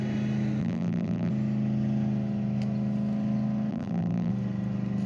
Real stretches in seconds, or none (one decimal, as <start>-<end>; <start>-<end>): 0.0-0.6; 1.3-3.7; 4.3-5.1